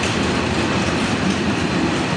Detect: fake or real real